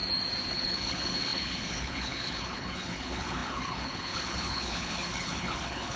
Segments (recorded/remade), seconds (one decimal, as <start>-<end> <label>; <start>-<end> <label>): 0.0-0.5 recorded; 0.5-6.0 remade